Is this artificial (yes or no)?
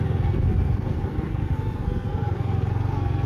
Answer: yes